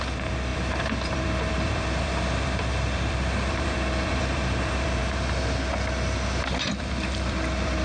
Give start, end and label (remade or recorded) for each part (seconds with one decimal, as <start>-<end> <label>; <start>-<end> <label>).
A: 0.0-5.0 remade; 5.0-6.6 recorded; 6.6-7.8 remade